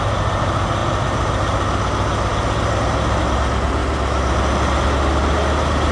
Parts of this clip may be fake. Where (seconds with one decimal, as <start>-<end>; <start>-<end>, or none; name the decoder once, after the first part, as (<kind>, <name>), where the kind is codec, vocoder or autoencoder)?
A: 3.8-4.4 (vocoder, BigVGAN v2)